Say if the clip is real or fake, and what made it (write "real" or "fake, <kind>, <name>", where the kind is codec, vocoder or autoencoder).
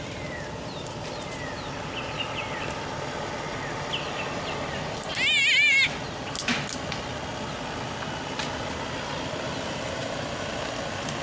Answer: real